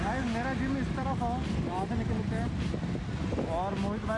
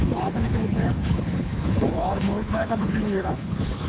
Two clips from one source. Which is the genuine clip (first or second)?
first